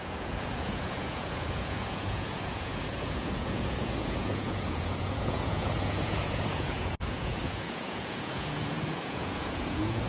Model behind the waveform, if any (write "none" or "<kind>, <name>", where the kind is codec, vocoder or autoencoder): vocoder, Vocos